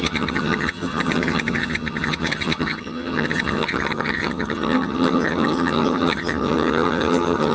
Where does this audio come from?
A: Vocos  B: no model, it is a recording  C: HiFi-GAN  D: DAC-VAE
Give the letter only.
C